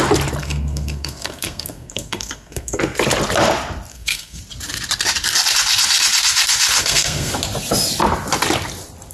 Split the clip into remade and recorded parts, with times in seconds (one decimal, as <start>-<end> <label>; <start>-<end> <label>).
0.0-0.4 recorded; 0.4-2.8 remade; 2.8-3.9 recorded; 3.9-4.4 remade; 4.4-6.8 recorded; 6.8-7.3 remade; 7.3-9.1 recorded